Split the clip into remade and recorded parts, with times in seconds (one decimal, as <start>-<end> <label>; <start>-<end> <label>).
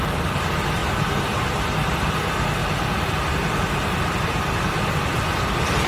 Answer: 0.0-0.8 recorded; 0.8-1.4 remade; 1.4-2.6 recorded; 2.6-4.8 remade; 4.8-5.9 recorded